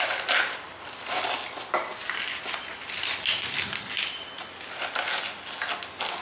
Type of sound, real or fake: real